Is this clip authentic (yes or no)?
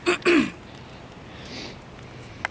yes